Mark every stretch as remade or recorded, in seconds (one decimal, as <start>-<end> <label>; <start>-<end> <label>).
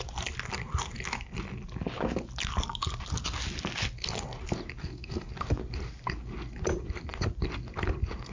0.0-4.8 recorded; 4.8-5.3 remade; 5.3-8.3 recorded